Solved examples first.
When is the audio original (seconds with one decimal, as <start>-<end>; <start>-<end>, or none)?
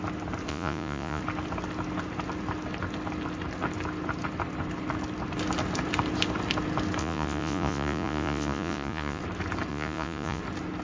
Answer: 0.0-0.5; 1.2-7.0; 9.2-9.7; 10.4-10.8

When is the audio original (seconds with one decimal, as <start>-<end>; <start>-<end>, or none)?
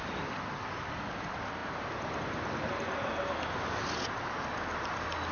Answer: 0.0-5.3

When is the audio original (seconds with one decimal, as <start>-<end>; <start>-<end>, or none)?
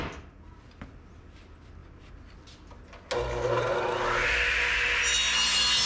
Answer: 0.0-5.9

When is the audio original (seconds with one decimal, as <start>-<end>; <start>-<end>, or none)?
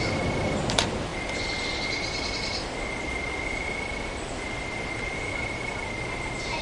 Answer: 0.0-6.6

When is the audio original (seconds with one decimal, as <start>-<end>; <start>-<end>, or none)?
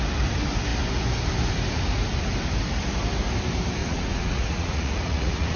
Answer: 0.0-3.8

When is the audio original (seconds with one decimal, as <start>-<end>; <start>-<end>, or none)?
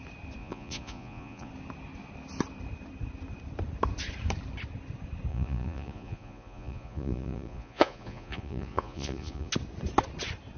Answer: 0.0-0.4; 1.5-5.3; 9.5-10.6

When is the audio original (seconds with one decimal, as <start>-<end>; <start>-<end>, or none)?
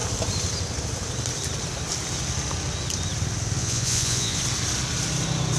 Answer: 0.0-3.6; 4.4-5.6